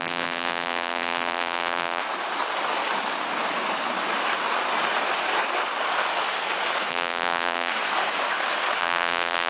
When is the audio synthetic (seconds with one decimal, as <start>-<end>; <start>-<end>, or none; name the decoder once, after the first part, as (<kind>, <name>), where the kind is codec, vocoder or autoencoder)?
0.0-2.0 (vocoder, BigVGAN v2); 6.9-7.7; 8.8-9.5